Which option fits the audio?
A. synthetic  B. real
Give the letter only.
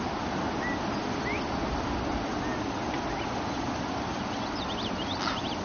B